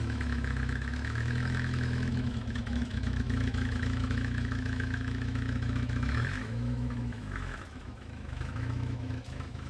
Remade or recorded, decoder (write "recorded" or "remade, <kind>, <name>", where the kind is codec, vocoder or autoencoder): remade, autoencoder, DAC-VAE